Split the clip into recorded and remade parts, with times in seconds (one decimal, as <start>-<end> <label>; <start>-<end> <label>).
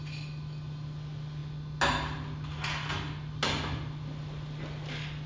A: 0.0-5.3 recorded